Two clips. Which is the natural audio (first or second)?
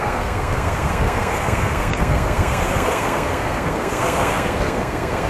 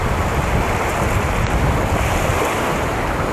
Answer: second